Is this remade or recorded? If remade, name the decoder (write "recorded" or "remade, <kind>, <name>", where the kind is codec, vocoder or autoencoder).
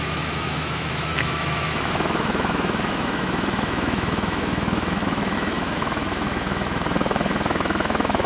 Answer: remade, autoencoder, DAC-VAE